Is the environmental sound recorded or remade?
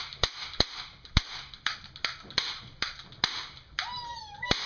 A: recorded